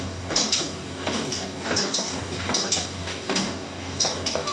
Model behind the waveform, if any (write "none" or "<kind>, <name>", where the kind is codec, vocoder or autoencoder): codec, DAC